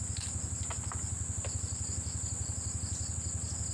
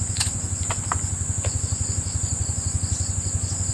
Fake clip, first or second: second